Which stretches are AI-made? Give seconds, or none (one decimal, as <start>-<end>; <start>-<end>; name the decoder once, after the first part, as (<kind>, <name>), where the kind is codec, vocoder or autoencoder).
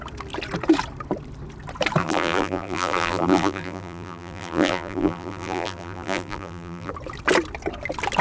2.0-6.9 (vocoder, BigVGAN v2)